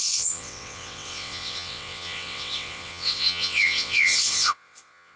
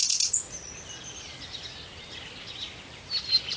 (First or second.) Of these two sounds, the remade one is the first